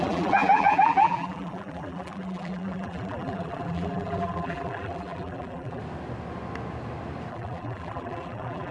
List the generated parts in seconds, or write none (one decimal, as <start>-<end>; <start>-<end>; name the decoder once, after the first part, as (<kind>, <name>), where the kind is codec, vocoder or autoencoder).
0.0-5.8 (vocoder, BigVGAN v2); 7.3-8.7